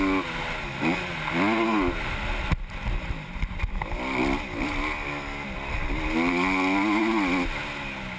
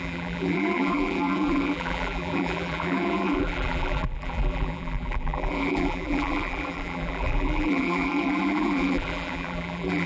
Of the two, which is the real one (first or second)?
first